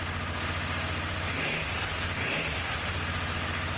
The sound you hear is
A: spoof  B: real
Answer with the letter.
B